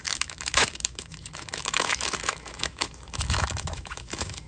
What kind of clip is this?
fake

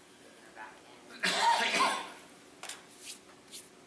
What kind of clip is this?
real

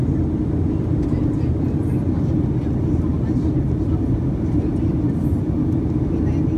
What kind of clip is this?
real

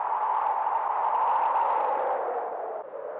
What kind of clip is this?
real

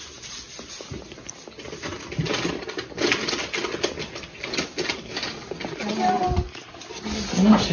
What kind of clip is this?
real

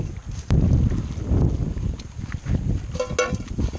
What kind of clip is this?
real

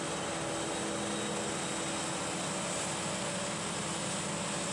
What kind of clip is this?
real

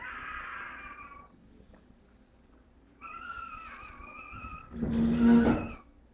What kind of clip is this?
real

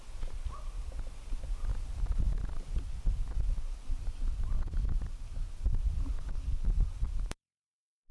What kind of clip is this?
real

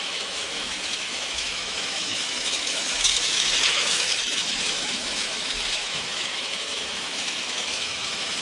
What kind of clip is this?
fake